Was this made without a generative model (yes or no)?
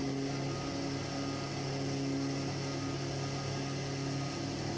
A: yes